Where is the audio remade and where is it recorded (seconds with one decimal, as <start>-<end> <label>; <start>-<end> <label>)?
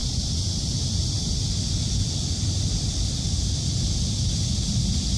0.0-3.1 remade; 3.1-5.2 recorded